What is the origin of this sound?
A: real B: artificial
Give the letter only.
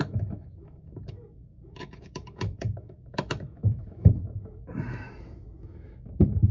B